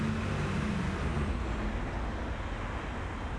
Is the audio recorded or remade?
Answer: recorded